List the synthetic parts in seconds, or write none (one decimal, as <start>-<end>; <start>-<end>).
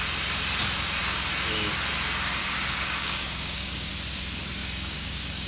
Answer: 2.4-3.9; 4.6-5.5